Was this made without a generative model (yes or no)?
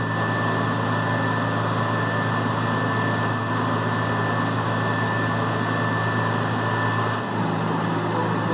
yes